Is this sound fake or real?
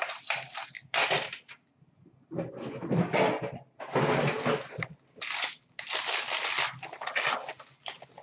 real